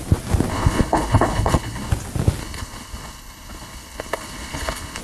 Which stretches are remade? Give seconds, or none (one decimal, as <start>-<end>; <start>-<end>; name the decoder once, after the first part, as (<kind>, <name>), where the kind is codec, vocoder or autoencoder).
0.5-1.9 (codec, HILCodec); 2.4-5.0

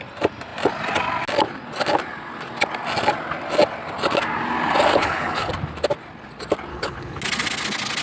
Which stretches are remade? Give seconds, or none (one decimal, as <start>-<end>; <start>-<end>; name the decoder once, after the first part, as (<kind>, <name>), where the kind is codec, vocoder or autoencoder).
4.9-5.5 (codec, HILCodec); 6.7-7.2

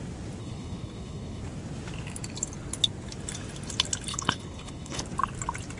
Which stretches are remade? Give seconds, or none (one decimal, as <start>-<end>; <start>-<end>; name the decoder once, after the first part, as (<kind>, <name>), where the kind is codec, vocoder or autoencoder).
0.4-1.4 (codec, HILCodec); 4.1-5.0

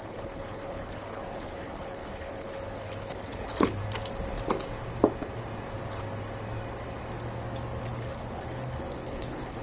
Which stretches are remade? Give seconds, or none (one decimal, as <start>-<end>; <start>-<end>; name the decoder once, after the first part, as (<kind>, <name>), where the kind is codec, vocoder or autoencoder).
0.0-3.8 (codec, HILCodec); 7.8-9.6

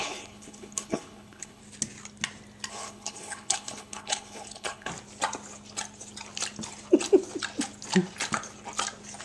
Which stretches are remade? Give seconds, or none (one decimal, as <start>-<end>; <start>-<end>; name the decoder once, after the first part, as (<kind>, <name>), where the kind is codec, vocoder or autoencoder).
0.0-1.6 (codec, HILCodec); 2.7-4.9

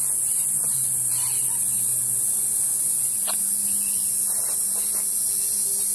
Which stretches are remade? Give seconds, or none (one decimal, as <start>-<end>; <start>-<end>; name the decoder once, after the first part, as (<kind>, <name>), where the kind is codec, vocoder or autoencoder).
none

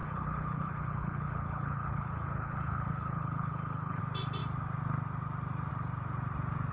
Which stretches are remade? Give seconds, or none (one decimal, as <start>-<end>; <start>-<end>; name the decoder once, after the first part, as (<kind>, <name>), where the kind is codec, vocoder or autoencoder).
0.0-4.0 (codec, HILCodec)